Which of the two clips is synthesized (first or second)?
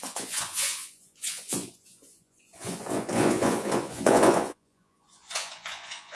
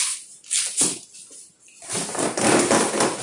first